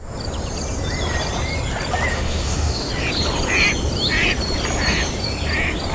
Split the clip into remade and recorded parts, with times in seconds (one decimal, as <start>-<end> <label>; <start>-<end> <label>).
0.0-2.1 recorded; 2.1-2.9 remade; 2.9-5.9 recorded